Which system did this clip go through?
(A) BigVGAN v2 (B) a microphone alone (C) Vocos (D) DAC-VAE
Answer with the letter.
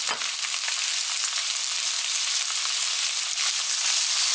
B